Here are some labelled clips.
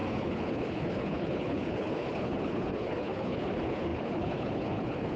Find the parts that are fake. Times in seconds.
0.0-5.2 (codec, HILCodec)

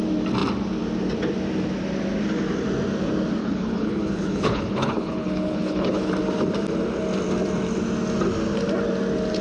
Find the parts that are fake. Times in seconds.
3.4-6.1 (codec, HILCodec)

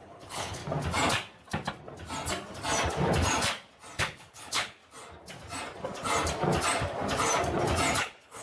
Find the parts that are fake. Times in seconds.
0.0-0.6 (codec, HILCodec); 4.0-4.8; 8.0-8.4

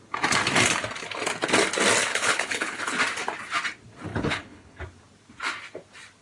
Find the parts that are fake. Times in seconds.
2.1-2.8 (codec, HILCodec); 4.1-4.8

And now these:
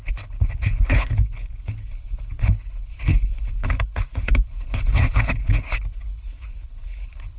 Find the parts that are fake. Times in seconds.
0.0-7.4 (codec, HILCodec)

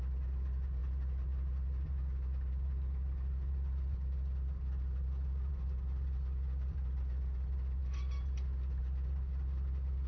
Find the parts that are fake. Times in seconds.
none

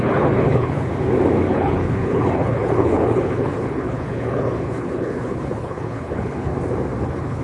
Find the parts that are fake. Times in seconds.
0.0-0.9 (codec, HILCodec); 1.5-6.5; 7.0-7.4

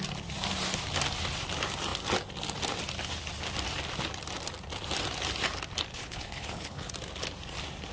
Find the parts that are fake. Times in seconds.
5.9-6.9 (codec, HILCodec)